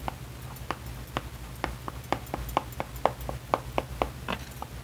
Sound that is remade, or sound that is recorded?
recorded